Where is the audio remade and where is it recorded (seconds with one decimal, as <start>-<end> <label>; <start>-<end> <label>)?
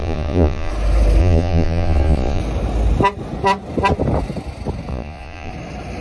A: 0.0-0.7 remade; 0.7-1.2 recorded; 1.2-2.4 remade; 2.4-4.9 recorded; 4.9-5.5 remade; 5.5-6.0 recorded